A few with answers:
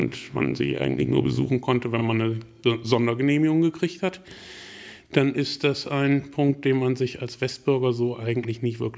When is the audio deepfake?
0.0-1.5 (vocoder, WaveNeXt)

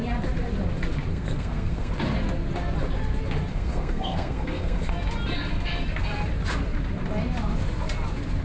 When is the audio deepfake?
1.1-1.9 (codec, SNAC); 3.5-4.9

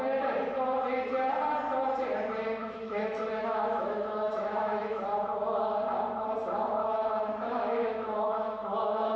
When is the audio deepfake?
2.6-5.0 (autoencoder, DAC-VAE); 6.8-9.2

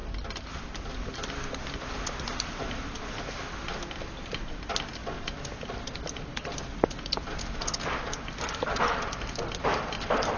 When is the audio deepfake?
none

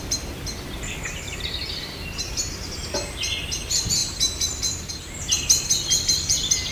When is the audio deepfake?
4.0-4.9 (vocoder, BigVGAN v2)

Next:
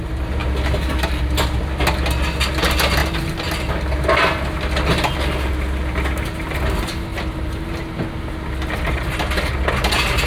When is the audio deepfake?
none

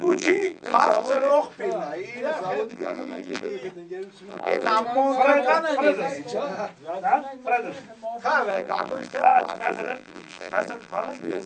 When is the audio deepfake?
0.0-1.3 (vocoder, BigVGAN v2); 2.7-3.5; 4.3-4.7; 8.5-11.5